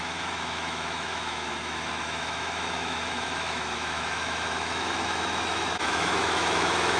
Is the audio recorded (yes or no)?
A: no